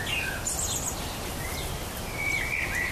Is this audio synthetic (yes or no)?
no